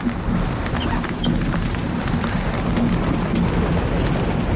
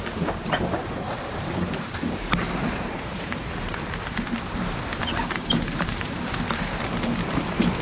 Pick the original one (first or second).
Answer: first